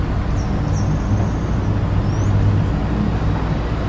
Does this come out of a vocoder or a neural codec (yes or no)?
no